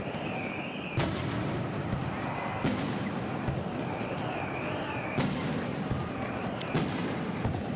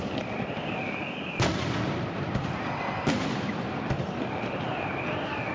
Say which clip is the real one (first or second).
first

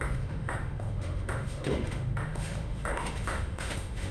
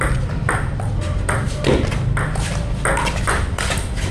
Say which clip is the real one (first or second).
second